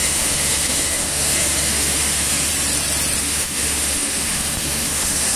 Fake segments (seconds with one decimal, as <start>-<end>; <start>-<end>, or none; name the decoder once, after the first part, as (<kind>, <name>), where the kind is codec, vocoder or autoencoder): 0.0-2.5 (autoencoder, DAC-VAE); 3.2-5.4